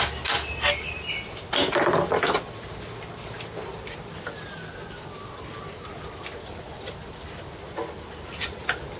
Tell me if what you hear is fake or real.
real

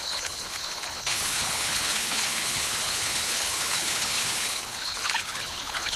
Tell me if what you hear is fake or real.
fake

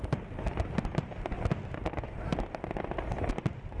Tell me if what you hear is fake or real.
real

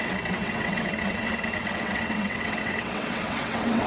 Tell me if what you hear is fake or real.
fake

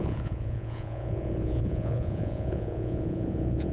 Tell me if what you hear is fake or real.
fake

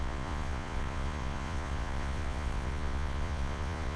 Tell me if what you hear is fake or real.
fake